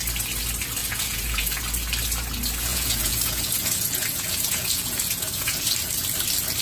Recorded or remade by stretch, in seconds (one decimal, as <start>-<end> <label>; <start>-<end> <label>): 0.0-0.8 recorded; 0.8-1.6 remade; 1.6-2.7 recorded; 2.7-5.6 remade; 5.6-6.6 recorded